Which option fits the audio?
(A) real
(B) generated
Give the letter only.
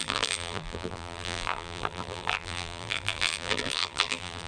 B